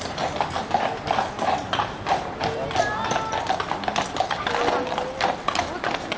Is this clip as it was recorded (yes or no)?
yes